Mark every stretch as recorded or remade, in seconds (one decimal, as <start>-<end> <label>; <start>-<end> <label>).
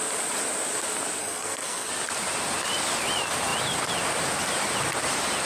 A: 0.0-1.2 recorded; 1.2-1.9 remade; 1.9-5.5 recorded